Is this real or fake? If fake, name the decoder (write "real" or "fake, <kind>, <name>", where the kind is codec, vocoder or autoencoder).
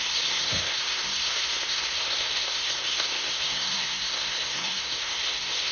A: fake, codec, SNAC